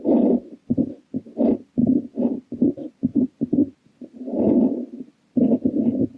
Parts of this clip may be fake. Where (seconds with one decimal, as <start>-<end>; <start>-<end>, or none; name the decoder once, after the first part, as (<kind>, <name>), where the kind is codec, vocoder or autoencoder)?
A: 3.1-4.4 (vocoder, BigVGAN v2)

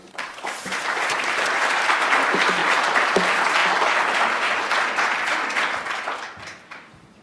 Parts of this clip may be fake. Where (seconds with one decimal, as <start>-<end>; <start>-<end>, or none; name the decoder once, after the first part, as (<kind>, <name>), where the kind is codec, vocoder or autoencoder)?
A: 0.0-3.6 (vocoder, BigVGAN v2); 6.4-7.2

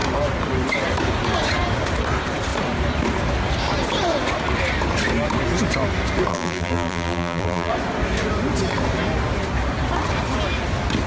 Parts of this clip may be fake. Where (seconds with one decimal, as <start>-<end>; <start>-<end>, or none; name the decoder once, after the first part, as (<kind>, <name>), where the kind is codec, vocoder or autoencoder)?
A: 6.3-7.7 (vocoder, BigVGAN v2)

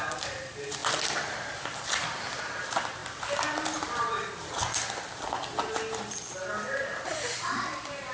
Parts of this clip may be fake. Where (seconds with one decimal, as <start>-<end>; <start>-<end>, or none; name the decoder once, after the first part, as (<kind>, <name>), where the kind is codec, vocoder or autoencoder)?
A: none

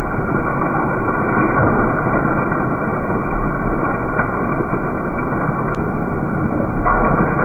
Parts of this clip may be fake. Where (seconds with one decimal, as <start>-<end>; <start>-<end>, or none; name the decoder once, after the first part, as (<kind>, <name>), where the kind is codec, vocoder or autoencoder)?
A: none

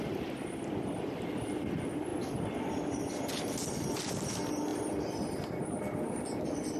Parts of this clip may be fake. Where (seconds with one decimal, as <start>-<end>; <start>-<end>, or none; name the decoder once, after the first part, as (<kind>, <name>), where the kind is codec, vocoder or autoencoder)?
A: none

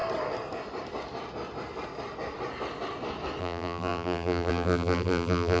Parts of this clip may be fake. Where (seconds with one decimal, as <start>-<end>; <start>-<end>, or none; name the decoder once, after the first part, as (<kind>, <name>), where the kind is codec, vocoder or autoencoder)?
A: 3.4-5.6 (vocoder, BigVGAN v2)